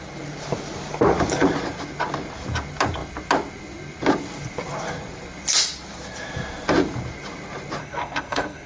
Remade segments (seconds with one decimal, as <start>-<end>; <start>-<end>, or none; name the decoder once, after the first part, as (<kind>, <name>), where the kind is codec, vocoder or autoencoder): 7.8-8.7 (codec, SNAC)